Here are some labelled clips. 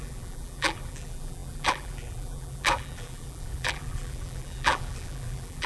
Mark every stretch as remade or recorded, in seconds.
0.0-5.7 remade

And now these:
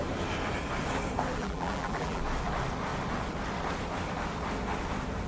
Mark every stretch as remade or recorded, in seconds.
0.0-1.4 recorded; 1.4-2.2 remade; 2.2-5.3 recorded

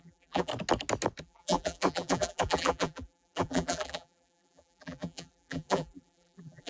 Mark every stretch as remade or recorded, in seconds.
0.0-0.5 remade; 0.5-1.2 recorded; 1.2-6.7 remade

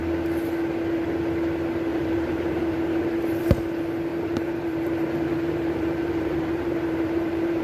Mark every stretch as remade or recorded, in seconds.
0.0-1.9 recorded; 1.9-3.5 remade; 3.5-4.1 recorded; 4.1-7.6 remade